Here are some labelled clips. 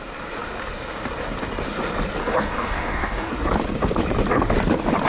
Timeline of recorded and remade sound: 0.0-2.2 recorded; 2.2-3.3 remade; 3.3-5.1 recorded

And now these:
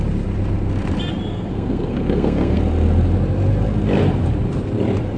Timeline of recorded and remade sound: 0.0-1.3 recorded; 1.3-2.6 remade; 2.6-5.2 recorded

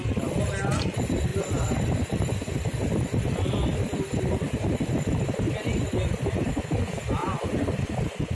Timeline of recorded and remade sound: 0.0-1.3 recorded; 1.3-5.2 remade; 5.2-8.3 recorded